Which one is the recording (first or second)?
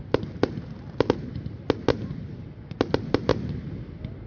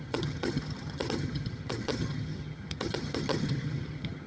first